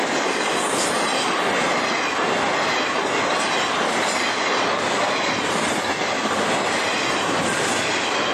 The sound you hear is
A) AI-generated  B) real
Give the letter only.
B